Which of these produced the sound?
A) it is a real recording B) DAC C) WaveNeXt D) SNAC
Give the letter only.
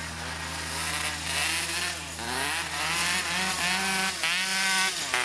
A